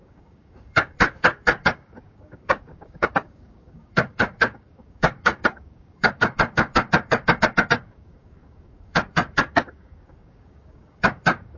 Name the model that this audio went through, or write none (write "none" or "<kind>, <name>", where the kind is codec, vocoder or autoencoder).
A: codec, DAC